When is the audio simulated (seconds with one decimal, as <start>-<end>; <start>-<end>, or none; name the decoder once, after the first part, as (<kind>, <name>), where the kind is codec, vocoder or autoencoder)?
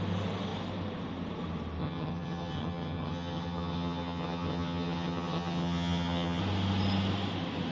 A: 1.8-6.4 (vocoder, HiFi-GAN)